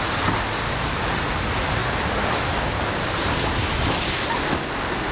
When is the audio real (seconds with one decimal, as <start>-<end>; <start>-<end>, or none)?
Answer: 0.0-5.1